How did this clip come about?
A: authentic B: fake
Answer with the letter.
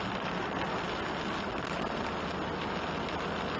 A